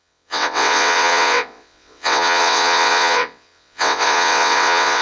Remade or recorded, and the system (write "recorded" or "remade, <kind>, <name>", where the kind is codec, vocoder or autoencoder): remade, vocoder, WaveNeXt